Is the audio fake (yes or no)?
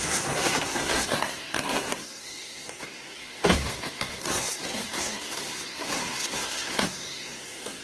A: yes